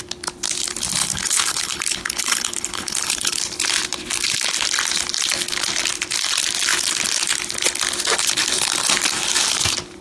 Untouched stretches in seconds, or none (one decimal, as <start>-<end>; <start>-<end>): 0.0-1.0; 3.4-10.0